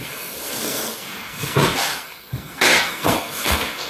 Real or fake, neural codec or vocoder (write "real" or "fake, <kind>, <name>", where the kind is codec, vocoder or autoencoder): fake, codec, SNAC